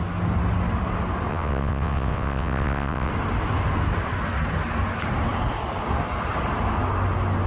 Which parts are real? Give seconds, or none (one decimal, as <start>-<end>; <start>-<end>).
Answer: 0.0-1.3; 3.1-7.5